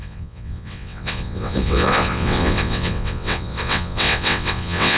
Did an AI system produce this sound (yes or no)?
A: yes